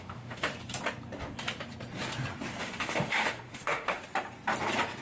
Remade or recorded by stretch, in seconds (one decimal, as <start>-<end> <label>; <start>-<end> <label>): 0.0-0.5 remade; 0.5-2.6 recorded; 2.6-4.0 remade; 4.0-5.0 recorded